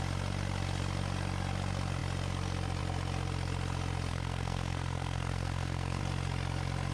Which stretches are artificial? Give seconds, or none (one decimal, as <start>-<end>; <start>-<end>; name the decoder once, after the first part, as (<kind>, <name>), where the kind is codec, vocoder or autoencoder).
4.1-6.0 (codec, SNAC)